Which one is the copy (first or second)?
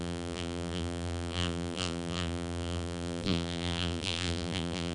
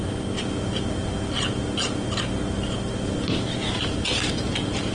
first